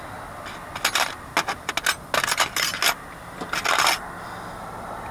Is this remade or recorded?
recorded